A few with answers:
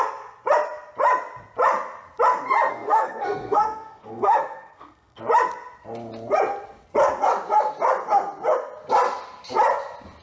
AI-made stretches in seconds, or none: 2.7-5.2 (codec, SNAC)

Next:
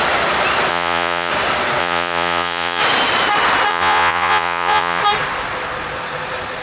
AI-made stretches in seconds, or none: 0.7-1.3 (vocoder, Vocos); 1.8-2.8; 3.7-5.0